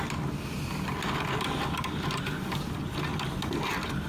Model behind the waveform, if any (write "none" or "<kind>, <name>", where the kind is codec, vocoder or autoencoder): none